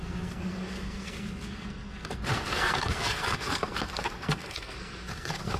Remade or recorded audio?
remade